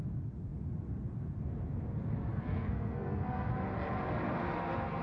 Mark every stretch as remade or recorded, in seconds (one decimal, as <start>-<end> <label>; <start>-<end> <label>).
0.0-2.3 recorded; 2.3-3.5 remade; 3.5-5.0 recorded